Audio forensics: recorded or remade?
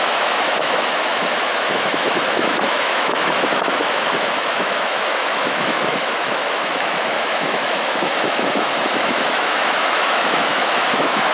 remade